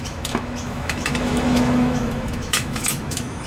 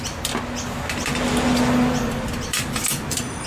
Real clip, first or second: second